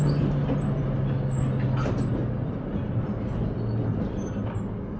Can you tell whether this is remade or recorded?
recorded